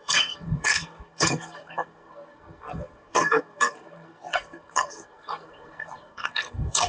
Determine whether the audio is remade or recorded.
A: remade